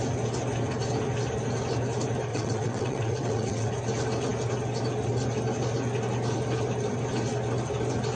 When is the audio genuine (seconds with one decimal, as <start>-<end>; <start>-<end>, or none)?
0.0-2.3; 3.7-8.1